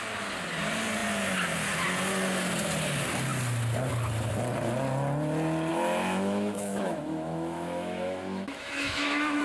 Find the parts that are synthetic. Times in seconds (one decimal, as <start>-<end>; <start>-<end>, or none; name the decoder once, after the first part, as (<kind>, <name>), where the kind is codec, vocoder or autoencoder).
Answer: 5.7-9.4 (autoencoder, DAC-VAE)